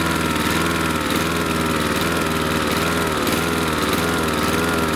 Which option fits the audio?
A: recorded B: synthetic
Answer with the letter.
A